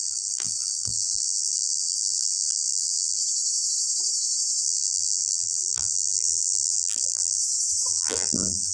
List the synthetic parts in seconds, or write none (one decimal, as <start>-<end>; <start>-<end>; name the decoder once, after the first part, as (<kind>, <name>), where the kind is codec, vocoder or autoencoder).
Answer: 0.0-3.2 (vocoder, BigVGAN v2); 4.6-7.4; 7.9-8.7